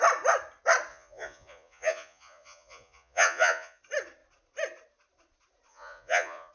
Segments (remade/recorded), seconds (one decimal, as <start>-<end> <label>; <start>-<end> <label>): 0.0-0.9 recorded; 0.9-3.8 remade; 3.8-5.7 recorded; 5.7-6.5 remade

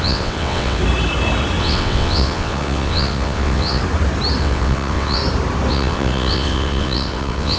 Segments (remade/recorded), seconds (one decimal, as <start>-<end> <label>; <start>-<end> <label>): 0.0-0.8 remade; 0.8-1.6 recorded; 1.6-3.8 remade; 3.8-4.4 recorded; 4.4-5.2 remade; 5.2-5.7 recorded; 5.7-7.6 remade

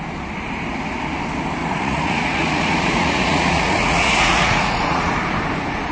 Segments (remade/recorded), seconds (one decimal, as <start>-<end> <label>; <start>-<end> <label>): 0.0-1.6 recorded; 1.6-5.1 remade; 5.1-5.9 recorded

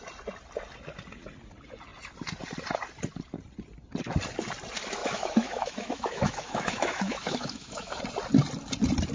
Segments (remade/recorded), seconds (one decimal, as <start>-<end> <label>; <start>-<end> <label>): 0.0-5.0 recorded; 5.0-8.0 remade; 8.0-9.1 recorded

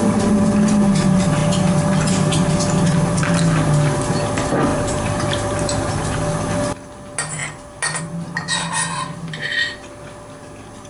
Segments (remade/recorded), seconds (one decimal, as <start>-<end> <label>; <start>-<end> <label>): 0.0-4.7 recorded; 4.7-6.2 remade; 6.2-10.9 recorded

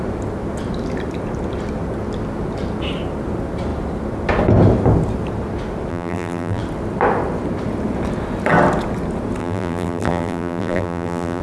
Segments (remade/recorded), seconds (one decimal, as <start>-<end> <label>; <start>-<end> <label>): 0.0-5.9 recorded; 5.9-6.6 remade; 6.6-9.4 recorded; 9.4-11.4 remade

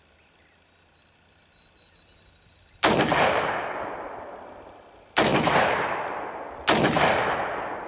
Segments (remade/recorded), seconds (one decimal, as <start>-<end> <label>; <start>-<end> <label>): 0.0-7.9 recorded